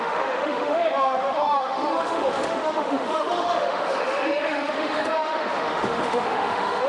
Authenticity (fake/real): fake